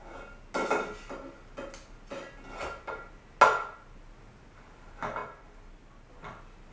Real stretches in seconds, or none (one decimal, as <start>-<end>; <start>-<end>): 0.0-6.7